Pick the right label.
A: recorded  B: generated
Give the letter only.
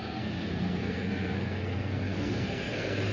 B